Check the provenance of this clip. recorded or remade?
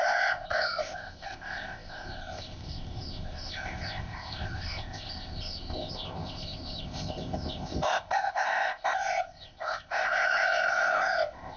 remade